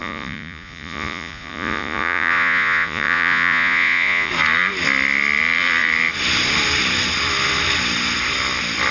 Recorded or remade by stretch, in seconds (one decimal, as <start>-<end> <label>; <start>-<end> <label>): 0.0-4.3 remade; 4.3-8.9 recorded